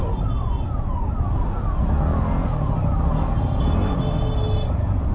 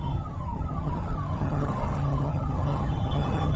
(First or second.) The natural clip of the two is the first